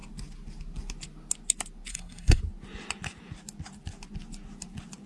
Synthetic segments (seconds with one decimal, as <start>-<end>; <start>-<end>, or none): 1.9-2.4